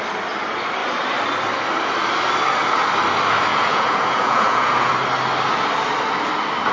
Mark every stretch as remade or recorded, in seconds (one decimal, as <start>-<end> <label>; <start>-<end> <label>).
0.0-3.5 recorded; 3.5-4.9 remade; 4.9-6.7 recorded